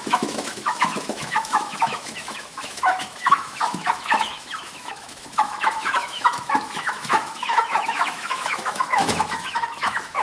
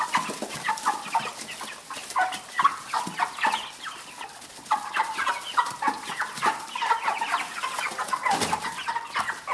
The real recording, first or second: second